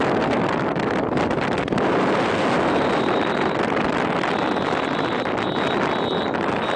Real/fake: real